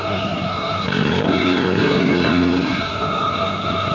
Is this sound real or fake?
fake